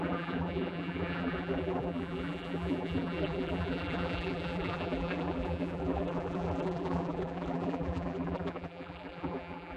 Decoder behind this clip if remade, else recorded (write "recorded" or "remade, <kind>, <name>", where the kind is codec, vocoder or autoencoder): remade, vocoder, BigVGAN v2